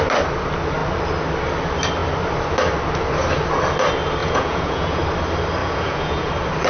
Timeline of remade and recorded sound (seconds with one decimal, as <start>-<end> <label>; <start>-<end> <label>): 0.0-4.2 recorded; 4.2-5.0 remade; 5.0-5.6 recorded; 5.6-6.3 remade; 6.3-6.7 recorded